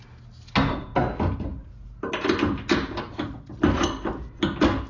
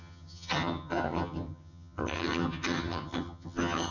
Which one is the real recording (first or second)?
first